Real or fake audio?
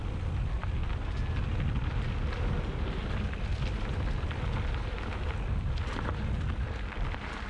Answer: real